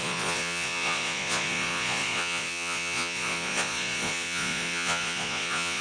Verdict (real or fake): fake